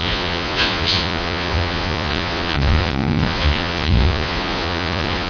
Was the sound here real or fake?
fake